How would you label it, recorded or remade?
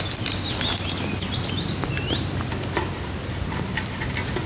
recorded